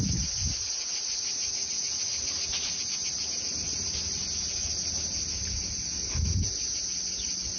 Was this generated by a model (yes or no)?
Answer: no